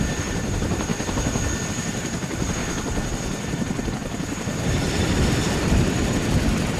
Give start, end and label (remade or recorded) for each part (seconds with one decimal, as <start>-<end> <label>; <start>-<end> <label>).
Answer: 0.0-0.9 remade; 0.9-1.7 recorded; 1.7-2.6 remade; 2.6-6.8 recorded